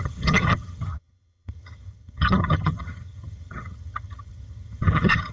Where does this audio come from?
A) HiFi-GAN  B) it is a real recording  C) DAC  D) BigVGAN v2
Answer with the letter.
A